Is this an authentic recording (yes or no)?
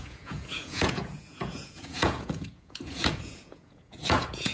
no